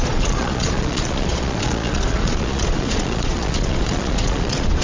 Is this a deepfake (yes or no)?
yes